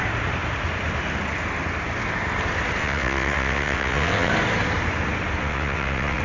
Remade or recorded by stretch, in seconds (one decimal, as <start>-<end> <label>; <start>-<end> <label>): 0.0-2.8 recorded; 2.8-4.3 remade; 4.3-5.4 recorded; 5.4-6.2 remade